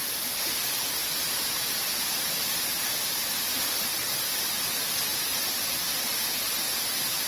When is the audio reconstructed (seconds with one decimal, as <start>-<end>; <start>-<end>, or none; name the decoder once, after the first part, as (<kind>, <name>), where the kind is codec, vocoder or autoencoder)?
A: 1.0-2.9 (vocoder, BigVGAN v2); 5.1-6.5